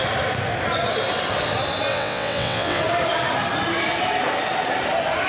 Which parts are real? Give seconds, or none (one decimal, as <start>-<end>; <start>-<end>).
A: 0.0-1.9; 2.8-5.3